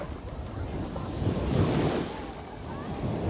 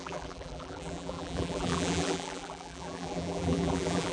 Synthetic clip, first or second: second